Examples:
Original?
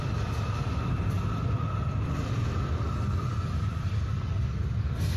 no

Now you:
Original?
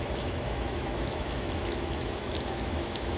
no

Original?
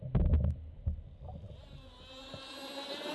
yes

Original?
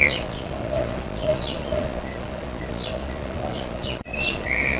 no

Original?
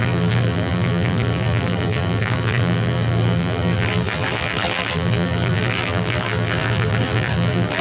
no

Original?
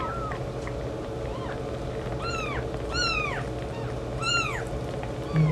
yes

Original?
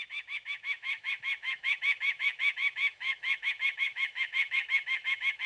no